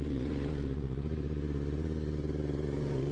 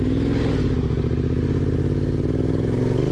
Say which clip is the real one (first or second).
second